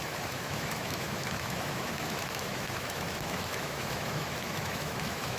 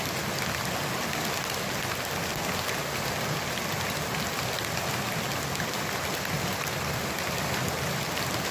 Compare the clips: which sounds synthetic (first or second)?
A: first